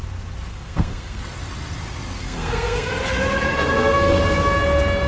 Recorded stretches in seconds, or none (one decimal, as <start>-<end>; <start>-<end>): 0.0-0.5; 1.2-2.2; 2.9-3.5; 4.2-5.1